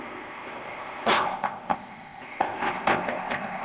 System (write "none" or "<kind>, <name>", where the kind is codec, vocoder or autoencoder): codec, ZipCodec